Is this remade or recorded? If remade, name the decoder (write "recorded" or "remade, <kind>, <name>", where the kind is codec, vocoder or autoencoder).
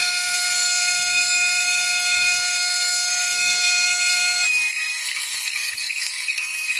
remade, codec, SNAC